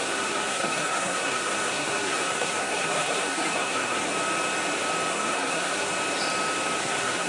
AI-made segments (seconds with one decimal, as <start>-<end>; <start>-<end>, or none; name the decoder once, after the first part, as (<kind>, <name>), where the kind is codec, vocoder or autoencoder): 0.0-4.0 (codec, SNAC); 5.1-5.9; 6.8-7.3